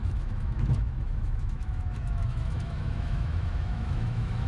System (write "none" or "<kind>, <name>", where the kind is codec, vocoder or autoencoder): autoencoder, DAC-VAE